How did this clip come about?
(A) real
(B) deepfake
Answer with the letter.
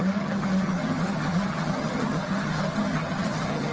B